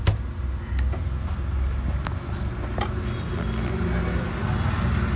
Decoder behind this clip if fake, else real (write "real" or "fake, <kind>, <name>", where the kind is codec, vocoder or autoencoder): real